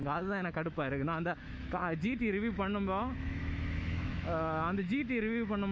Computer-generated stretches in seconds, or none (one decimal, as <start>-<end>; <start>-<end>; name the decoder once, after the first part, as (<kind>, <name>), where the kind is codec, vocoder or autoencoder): 0.0-5.7 (autoencoder, DAC-VAE)